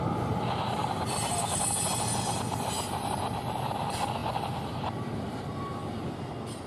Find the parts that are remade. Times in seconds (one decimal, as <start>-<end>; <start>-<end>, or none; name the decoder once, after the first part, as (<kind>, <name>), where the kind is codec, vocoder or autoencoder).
0.8-2.4 (vocoder, BigVGAN v2); 4.2-5.4